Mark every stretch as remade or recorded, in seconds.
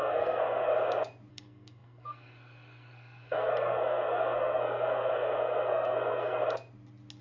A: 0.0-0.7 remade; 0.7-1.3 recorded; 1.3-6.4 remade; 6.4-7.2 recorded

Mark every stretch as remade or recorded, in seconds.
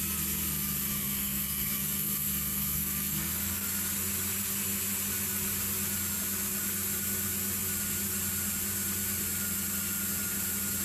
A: 0.0-0.9 recorded; 0.9-3.7 remade; 3.7-10.8 recorded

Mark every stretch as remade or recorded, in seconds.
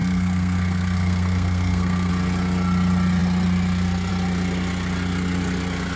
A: 0.0-2.1 remade; 2.1-6.0 recorded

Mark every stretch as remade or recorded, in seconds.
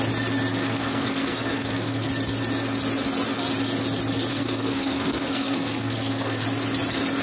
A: 0.0-0.5 recorded; 0.5-2.1 remade; 2.1-4.3 recorded; 4.3-6.4 remade; 6.4-7.2 recorded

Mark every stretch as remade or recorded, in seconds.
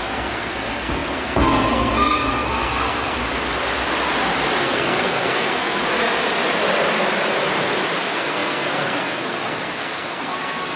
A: 0.0-3.2 remade; 3.2-4.6 recorded; 4.6-5.8 remade; 5.8-8.0 recorded; 8.0-10.8 remade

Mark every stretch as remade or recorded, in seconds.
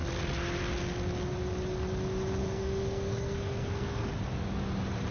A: 0.0-2.4 recorded; 2.4-4.1 remade; 4.1-5.1 recorded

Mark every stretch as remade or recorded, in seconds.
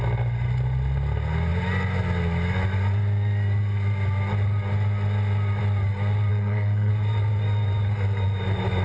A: 0.0-6.3 recorded; 6.3-6.9 remade; 6.9-8.8 recorded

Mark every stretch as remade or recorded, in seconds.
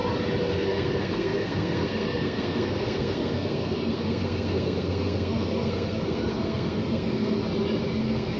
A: 0.0-0.5 recorded; 0.5-7.4 remade; 7.4-8.0 recorded; 8.0-8.4 remade